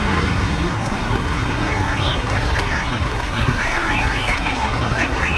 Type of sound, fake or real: fake